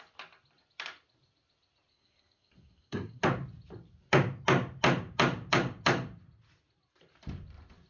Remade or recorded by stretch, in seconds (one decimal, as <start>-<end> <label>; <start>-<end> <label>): 0.0-1.9 recorded; 1.9-3.2 remade; 3.2-7.9 recorded